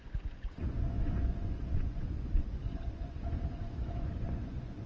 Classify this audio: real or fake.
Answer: fake